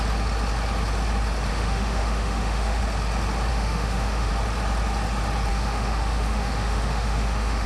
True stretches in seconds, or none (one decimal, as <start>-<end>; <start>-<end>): 0.0-1.5; 2.8-3.5; 4.3-5.5